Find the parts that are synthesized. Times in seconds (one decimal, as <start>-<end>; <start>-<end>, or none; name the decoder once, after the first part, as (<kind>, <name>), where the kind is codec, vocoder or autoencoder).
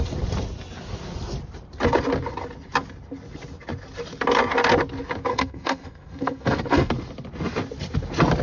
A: 5.3-6.9 (codec, SNAC)